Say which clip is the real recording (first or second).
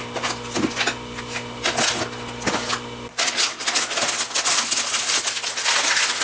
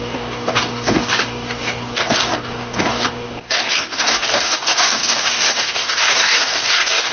first